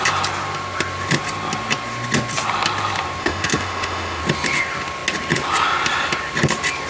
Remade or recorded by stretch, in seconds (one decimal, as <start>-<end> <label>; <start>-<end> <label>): 0.0-3.2 recorded; 3.2-4.2 remade; 4.2-6.9 recorded